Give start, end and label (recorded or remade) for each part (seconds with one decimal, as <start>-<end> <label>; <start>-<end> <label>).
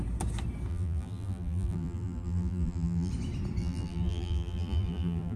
0.0-0.7 recorded; 0.7-3.1 remade; 3.1-3.6 recorded; 3.6-5.4 remade